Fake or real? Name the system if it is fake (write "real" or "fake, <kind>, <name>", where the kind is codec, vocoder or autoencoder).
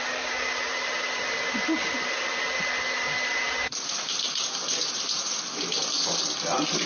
fake, vocoder, BigVGAN v2